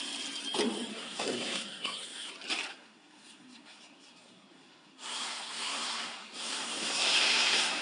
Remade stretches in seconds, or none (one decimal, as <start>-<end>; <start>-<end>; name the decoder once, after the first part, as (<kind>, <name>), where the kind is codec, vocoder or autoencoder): 0.9-2.3 (codec, SNAC); 2.7-7.8